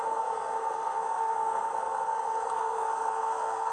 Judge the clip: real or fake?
fake